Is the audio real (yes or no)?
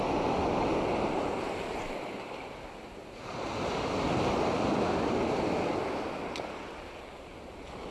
yes